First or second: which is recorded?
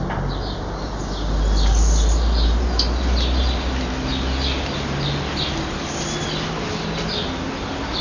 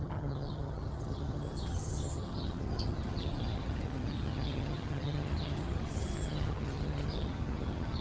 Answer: first